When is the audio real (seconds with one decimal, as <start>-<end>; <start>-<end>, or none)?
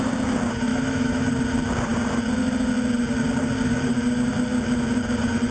0.0-0.7; 1.3-5.5